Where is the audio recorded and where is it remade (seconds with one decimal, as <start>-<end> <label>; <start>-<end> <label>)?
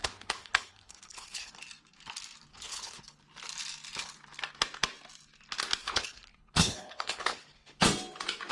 0.0-1.5 remade; 1.5-2.5 recorded; 2.5-3.0 remade; 3.0-5.8 recorded; 5.8-7.8 remade; 7.8-8.5 recorded